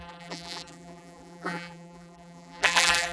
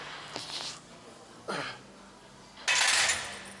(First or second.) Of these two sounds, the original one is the second